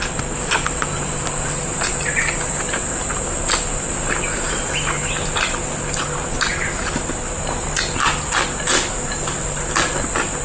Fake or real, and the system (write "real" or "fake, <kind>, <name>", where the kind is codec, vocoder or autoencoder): real